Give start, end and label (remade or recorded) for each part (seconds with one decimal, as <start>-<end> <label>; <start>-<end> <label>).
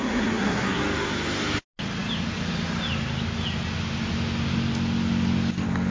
0.0-0.8 remade; 0.8-5.9 recorded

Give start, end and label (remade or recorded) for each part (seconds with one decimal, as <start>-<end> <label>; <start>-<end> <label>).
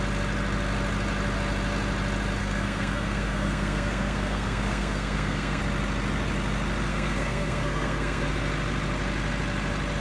0.0-2.4 recorded; 2.4-5.6 remade; 5.6-6.9 recorded; 6.9-8.3 remade; 8.3-10.0 recorded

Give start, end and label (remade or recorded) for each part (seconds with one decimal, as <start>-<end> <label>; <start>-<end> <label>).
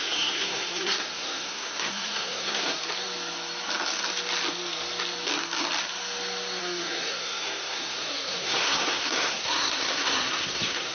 0.0-2.8 remade; 2.8-6.6 recorded; 6.6-10.9 remade